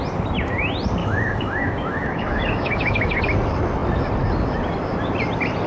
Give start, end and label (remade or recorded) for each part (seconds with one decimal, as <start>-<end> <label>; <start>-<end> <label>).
0.0-1.0 recorded; 1.0-3.2 remade; 3.2-5.7 recorded